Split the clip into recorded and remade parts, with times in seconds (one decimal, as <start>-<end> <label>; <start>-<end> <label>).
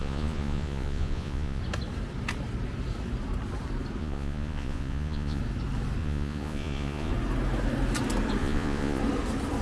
0.0-1.6 remade; 1.6-4.0 recorded; 4.0-5.4 remade; 5.4-6.0 recorded; 6.0-7.1 remade; 7.1-8.4 recorded; 8.4-9.0 remade; 9.0-9.6 recorded